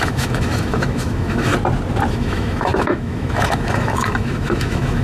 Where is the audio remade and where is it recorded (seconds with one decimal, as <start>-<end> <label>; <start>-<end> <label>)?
0.0-1.5 remade; 1.5-2.1 recorded; 2.1-5.0 remade